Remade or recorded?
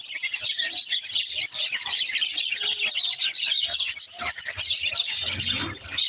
recorded